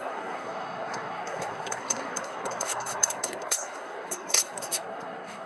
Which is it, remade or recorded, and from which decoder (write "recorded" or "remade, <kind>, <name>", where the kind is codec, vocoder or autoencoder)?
remade, codec, SNAC